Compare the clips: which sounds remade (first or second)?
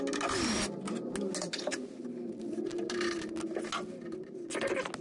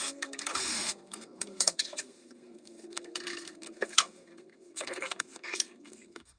second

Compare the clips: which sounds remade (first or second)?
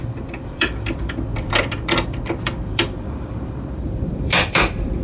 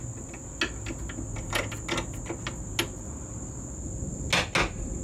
first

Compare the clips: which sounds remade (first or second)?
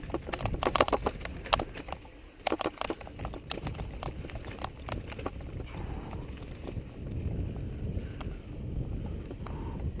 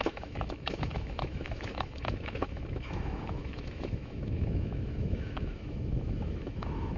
second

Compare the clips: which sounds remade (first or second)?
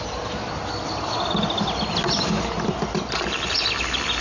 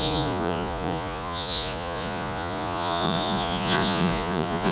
second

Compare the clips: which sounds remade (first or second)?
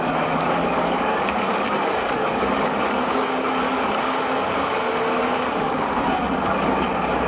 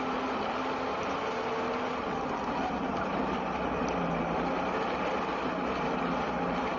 first